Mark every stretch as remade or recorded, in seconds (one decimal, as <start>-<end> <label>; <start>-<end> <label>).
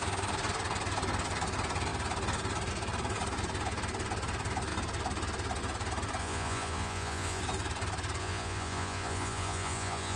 0.0-6.2 recorded; 6.2-7.4 remade; 7.4-8.2 recorded; 8.2-10.2 remade